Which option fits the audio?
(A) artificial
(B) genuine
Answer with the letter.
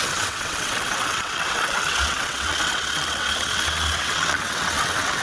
A